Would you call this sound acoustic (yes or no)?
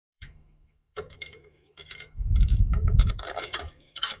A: no